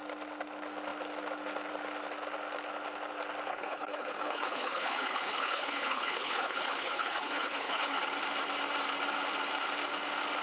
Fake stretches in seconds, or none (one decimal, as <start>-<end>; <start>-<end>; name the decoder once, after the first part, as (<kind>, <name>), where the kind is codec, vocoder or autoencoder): 3.5-8.0 (codec, HILCodec)